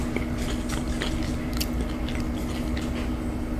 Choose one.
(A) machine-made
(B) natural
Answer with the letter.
B